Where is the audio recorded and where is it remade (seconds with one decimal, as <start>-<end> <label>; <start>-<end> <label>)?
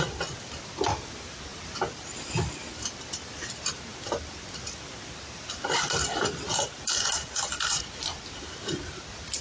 0.0-9.4 recorded